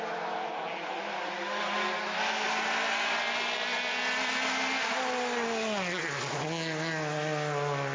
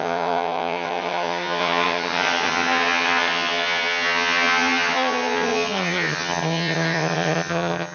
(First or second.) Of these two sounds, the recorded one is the first